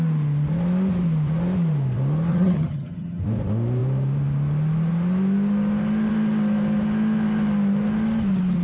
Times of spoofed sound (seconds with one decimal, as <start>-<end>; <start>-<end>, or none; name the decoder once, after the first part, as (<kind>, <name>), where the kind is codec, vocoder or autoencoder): 2.3-3.2 (vocoder, HiFi-GAN)